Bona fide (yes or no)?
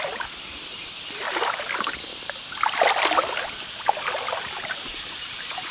yes